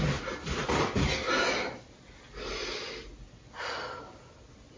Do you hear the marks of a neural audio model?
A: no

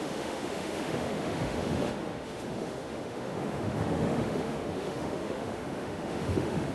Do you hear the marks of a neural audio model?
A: yes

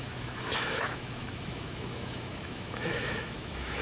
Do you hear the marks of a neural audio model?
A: yes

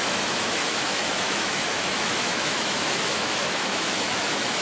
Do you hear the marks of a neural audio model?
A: yes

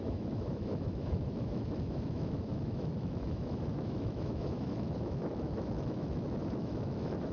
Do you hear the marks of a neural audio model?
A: yes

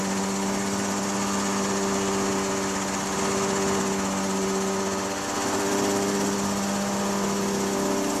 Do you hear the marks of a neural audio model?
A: no